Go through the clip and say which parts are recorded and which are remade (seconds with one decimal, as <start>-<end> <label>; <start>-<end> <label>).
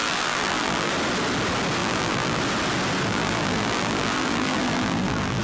0.0-0.9 remade; 0.9-1.8 recorded; 1.8-2.4 remade; 2.4-3.1 recorded; 3.1-5.4 remade